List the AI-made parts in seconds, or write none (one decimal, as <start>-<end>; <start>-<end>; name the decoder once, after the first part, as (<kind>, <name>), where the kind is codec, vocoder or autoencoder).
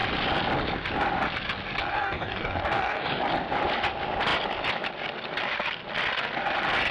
1.9-3.2 (codec, DAC)